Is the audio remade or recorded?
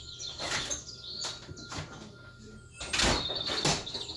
recorded